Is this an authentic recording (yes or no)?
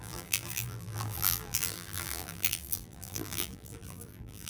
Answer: no